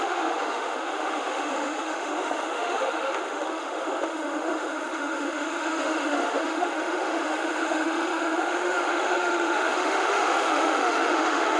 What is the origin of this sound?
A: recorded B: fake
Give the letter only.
B